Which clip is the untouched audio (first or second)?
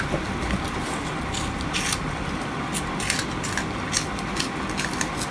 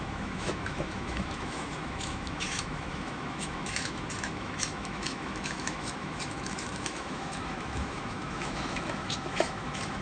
first